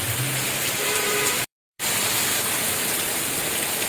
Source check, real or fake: fake